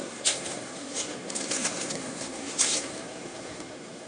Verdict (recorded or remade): remade